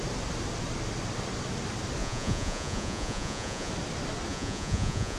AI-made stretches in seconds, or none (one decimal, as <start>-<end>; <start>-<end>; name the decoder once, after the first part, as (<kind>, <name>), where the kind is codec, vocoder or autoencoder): 2.0-3.7 (vocoder, Vocos); 4.3-5.2